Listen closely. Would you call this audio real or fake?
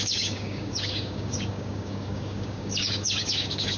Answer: fake